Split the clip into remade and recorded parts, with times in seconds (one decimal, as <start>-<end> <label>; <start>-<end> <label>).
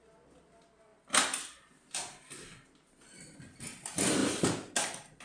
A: 0.0-5.2 recorded